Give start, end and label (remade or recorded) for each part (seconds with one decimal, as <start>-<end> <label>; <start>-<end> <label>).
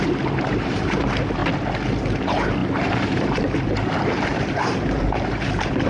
0.0-1.4 remade; 1.4-2.0 recorded; 2.0-5.9 remade